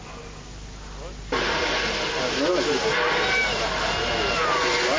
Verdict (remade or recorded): recorded